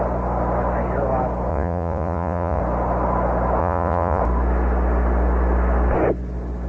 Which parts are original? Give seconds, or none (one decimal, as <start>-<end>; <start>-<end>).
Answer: 0.0-1.5; 2.6-3.6; 4.2-6.7